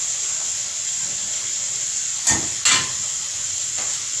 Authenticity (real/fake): real